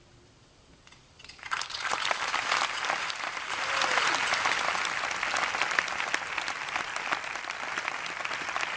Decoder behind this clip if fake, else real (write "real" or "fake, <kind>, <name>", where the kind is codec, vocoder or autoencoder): real